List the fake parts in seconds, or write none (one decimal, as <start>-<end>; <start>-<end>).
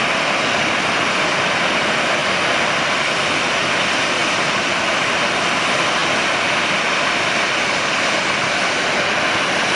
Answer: none